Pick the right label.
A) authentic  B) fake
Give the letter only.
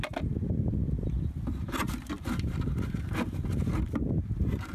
A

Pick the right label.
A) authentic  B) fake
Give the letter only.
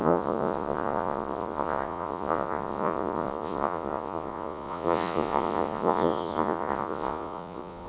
B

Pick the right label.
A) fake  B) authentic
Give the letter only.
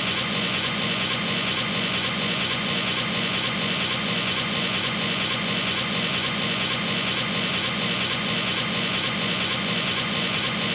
A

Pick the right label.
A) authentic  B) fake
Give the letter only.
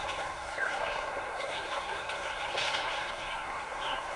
B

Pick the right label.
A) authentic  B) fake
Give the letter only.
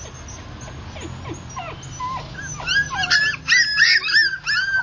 A